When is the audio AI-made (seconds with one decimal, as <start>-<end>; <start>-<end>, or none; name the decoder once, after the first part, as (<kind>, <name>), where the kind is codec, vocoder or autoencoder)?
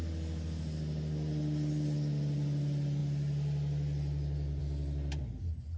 none